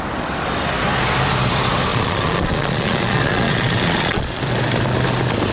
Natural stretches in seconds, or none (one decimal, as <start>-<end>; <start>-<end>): 0.0-1.9; 4.4-5.5